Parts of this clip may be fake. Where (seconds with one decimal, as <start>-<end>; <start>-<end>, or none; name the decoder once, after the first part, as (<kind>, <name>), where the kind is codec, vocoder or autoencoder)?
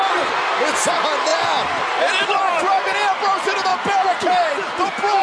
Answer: none